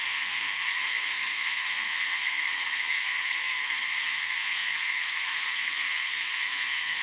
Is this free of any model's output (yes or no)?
no